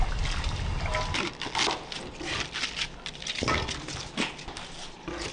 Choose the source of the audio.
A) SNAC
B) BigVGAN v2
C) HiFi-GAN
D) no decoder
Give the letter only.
D